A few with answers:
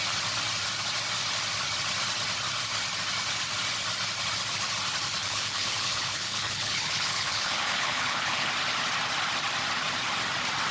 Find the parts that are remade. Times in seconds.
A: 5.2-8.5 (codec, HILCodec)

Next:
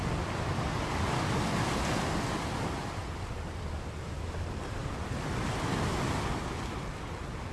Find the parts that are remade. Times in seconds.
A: none

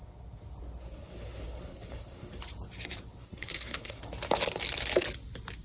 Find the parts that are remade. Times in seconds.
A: 0.8-2.4 (codec, HILCodec); 3.2-4.0

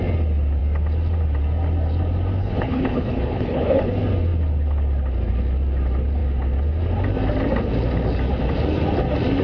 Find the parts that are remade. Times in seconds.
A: 2.4-3.9 (codec, HILCodec)